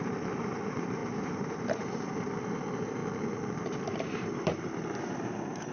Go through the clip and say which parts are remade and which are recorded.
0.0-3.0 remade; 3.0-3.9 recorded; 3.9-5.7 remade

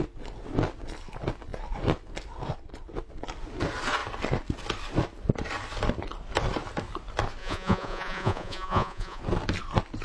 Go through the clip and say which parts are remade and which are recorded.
0.0-7.4 recorded; 7.4-9.2 remade; 9.2-10.0 recorded

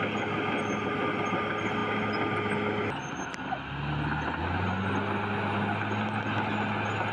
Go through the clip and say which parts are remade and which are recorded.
0.0-7.1 recorded

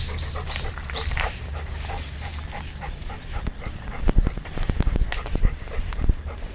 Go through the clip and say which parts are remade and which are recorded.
0.0-6.5 remade

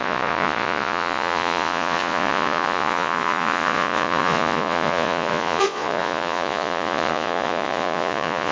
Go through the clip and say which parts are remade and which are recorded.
0.0-8.5 remade